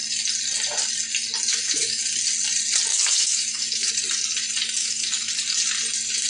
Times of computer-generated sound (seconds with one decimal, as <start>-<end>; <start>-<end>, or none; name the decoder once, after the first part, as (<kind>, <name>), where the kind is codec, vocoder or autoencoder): 1.5-2.0 (autoencoder, DAC-VAE); 2.9-3.9; 4.8-5.3